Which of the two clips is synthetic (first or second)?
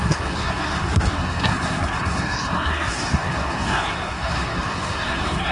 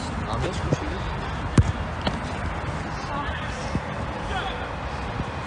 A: first